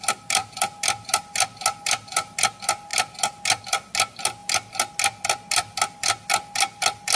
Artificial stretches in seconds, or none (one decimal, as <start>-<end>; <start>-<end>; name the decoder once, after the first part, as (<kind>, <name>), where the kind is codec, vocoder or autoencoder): none